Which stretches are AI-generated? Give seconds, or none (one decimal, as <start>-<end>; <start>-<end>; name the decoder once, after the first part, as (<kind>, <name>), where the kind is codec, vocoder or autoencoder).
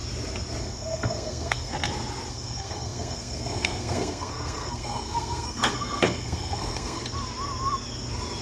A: 0.6-1.7 (codec, SNAC); 2.3-7.0